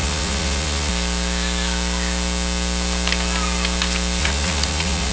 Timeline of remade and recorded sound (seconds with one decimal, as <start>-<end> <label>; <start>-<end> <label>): 0.0-0.9 remade; 0.9-4.2 recorded; 4.2-5.1 remade